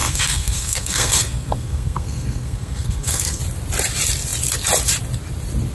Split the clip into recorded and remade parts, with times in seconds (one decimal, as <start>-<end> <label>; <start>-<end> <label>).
0.0-3.4 remade; 3.4-5.7 recorded